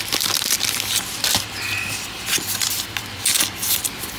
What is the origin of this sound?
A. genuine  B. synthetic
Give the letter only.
A